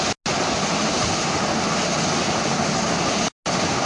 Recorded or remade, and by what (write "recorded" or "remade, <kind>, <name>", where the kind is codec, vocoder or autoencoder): recorded